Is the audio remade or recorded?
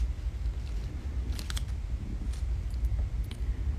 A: recorded